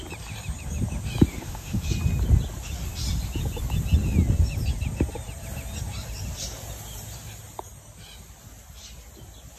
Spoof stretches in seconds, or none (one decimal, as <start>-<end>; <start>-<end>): 1.3-1.8